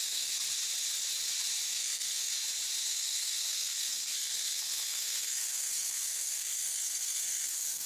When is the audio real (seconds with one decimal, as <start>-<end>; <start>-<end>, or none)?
0.4-1.7; 2.3-2.8